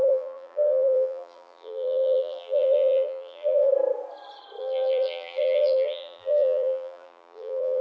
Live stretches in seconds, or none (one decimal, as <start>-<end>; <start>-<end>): 3.7-4.6

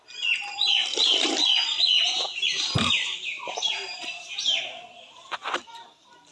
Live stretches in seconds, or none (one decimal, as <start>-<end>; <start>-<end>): 0.0-0.8; 4.6-6.3